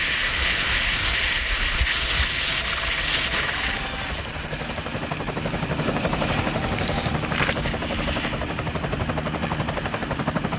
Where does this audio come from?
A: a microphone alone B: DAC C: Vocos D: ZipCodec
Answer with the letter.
A